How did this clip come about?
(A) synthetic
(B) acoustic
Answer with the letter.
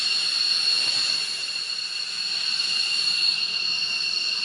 B